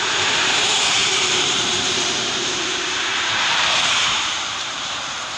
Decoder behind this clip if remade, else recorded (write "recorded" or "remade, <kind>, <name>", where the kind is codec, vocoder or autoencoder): remade, vocoder, BigVGAN v2